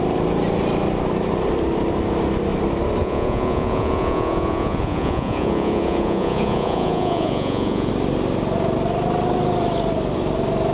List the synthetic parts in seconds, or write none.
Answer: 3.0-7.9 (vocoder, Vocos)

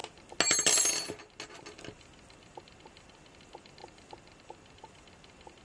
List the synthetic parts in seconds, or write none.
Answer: none

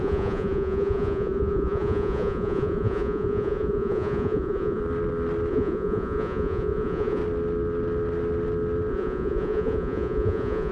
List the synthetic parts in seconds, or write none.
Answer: 0.0-4.8 (vocoder, Vocos); 5.5-7.2; 8.9-10.7

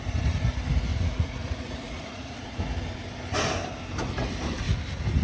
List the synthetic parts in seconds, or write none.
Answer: 0.9-2.6 (vocoder, Vocos)